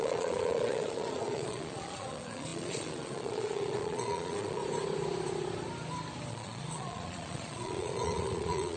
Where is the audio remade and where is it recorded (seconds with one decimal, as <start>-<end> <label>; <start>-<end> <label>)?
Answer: 0.0-4.6 remade; 4.6-6.3 recorded; 6.3-8.8 remade